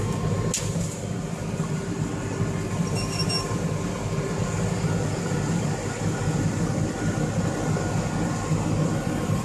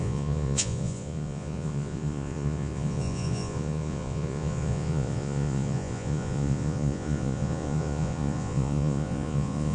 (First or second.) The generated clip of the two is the second